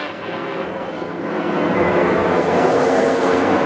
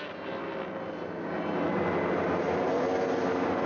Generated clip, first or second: first